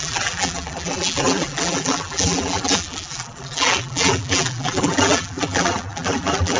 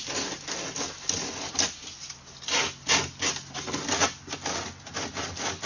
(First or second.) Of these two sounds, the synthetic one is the first